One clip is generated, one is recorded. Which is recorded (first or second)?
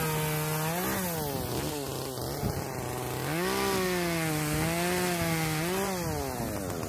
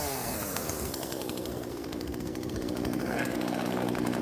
first